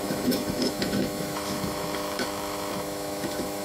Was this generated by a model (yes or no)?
yes